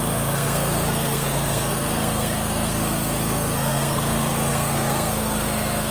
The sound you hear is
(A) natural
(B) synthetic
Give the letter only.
B